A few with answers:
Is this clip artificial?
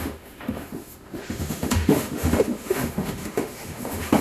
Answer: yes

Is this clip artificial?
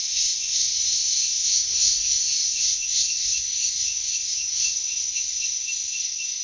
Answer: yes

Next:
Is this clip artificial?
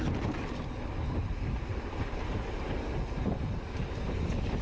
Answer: no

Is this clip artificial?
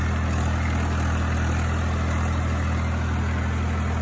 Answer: no